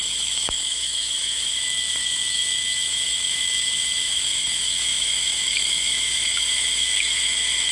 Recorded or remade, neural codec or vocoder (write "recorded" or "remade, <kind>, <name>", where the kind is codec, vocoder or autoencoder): remade, autoencoder, DAC-VAE